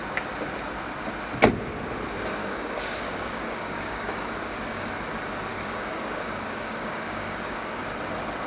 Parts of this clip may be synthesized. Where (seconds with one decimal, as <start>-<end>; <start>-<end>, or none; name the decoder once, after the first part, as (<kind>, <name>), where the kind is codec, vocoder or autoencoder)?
2.4-4.9 (codec, DAC); 5.5-7.8